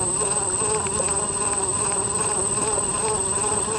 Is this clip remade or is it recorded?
recorded